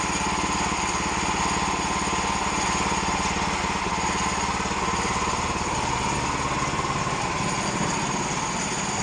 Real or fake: real